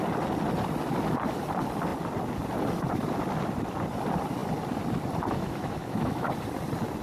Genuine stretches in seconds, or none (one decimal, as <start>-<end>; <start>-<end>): 0.0-5.4; 6.3-7.0